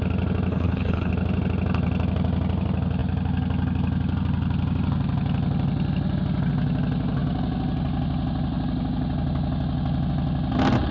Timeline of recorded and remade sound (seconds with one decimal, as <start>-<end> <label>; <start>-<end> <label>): 0.0-0.5 recorded; 0.5-1.1 remade; 1.1-10.9 recorded